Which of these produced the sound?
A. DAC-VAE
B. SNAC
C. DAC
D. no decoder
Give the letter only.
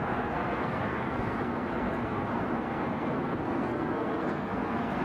B